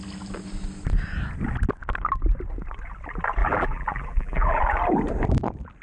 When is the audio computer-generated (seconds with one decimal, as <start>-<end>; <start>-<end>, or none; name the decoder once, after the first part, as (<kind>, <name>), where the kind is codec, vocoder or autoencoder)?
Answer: 3.4-4.6 (vocoder, BigVGAN v2)